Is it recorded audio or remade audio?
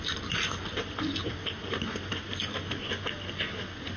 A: recorded